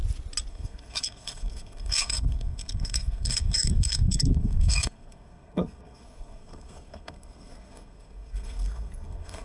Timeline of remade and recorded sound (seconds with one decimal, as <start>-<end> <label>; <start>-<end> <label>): 0.0-0.5 recorded; 0.5-9.4 remade